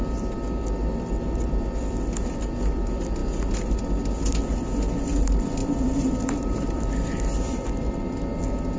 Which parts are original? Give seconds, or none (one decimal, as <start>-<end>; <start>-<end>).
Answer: 0.0-5.6; 6.8-8.8